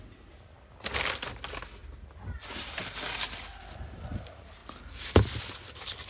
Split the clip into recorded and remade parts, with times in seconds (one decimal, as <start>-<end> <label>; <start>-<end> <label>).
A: 0.0-6.1 recorded